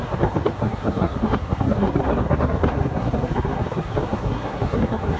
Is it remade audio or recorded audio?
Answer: remade